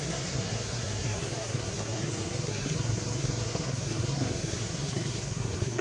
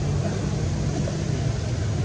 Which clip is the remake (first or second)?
first